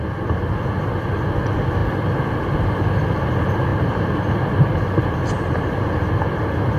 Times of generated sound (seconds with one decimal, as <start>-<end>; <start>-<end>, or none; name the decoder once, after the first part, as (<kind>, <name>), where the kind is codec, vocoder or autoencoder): 1.8-3.3 (vocoder, BigVGAN v2); 3.7-6.1